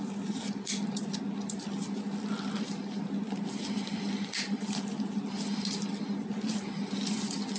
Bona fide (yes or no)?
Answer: yes